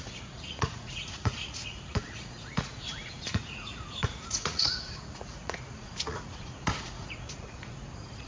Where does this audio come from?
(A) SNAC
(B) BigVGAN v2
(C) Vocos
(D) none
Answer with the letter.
C